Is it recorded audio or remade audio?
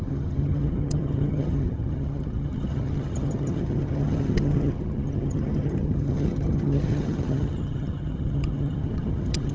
remade